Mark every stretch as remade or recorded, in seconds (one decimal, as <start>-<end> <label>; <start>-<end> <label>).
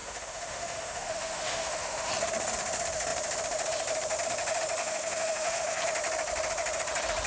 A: 0.0-2.1 remade; 2.1-4.8 recorded; 4.8-5.8 remade; 5.8-7.3 recorded